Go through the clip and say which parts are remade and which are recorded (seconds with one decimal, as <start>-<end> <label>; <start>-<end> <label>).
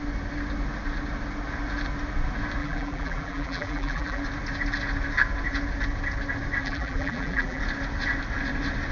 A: 0.0-2.6 recorded; 2.6-4.2 remade; 4.2-6.6 recorded; 6.6-7.6 remade; 7.6-8.9 recorded